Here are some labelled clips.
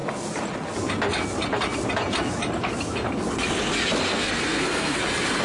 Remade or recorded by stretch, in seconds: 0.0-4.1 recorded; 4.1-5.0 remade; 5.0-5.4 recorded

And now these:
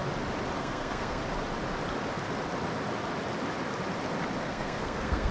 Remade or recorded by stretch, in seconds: 0.0-0.6 recorded; 0.6-1.2 remade; 1.2-4.4 recorded; 4.4-5.3 remade

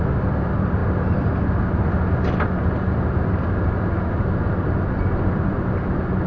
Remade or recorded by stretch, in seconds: 0.0-6.3 recorded

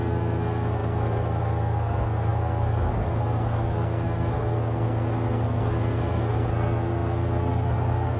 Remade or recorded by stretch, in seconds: 0.0-8.2 remade

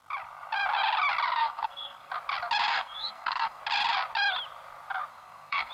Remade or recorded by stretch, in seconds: 0.0-1.4 recorded; 1.4-2.1 remade; 2.1-2.7 recorded; 2.7-3.6 remade; 3.6-5.1 recorded; 5.1-5.7 remade